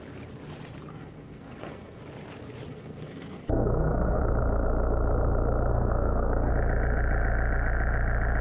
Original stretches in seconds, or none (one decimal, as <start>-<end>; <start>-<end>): 0.0-0.9; 2.0-2.7; 4.2-5.7; 6.5-8.4